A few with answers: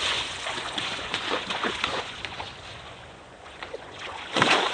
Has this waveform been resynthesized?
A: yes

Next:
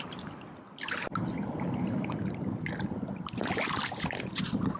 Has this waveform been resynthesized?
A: no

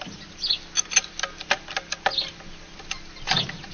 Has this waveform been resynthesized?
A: no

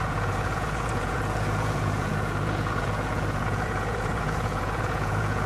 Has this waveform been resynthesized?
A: yes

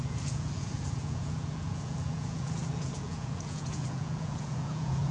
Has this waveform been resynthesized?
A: yes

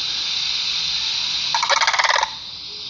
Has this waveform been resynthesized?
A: no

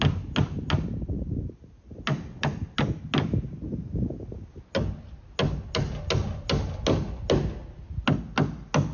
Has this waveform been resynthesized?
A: no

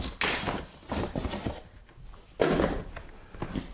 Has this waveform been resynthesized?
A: no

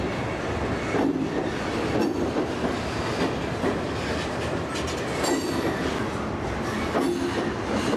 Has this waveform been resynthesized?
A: no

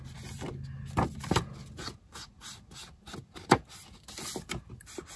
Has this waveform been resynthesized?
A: no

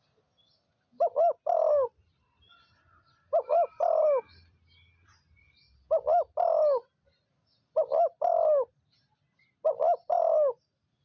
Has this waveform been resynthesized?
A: no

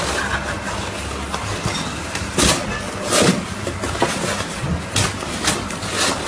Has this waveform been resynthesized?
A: no